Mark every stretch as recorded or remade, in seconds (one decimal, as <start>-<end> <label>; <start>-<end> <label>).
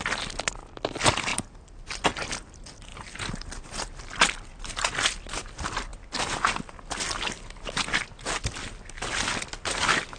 0.0-2.9 recorded; 2.9-4.0 remade; 4.0-10.2 recorded